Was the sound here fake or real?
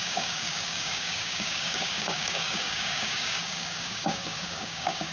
fake